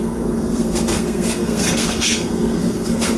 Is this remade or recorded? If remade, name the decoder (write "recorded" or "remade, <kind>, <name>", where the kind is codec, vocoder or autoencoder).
remade, codec, SNAC